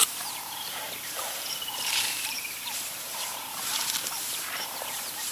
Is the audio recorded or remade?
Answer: remade